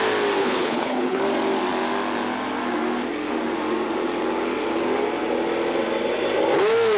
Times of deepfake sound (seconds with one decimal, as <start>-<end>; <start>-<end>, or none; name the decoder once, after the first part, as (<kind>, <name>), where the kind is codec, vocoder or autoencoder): 0.4-1.2 (codec, HILCodec)